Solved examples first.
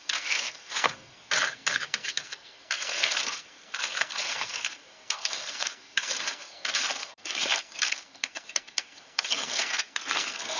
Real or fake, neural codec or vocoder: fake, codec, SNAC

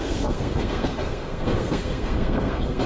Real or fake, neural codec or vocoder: fake, codec, SNAC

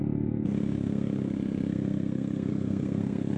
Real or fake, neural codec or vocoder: fake, codec, SNAC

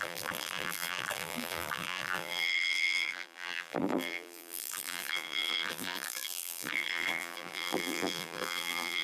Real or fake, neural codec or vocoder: fake, vocoder, BigVGAN v2